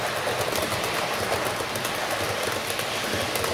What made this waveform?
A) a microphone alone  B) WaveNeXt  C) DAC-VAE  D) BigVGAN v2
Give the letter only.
A